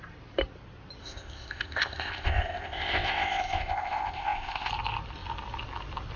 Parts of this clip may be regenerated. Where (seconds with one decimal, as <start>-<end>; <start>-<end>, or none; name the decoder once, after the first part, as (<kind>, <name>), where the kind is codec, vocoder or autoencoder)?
1.0-4.7 (codec, ZipCodec)